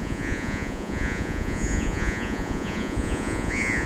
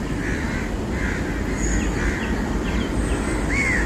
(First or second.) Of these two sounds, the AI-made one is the first